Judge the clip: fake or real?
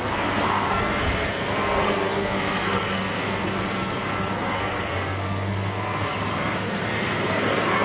fake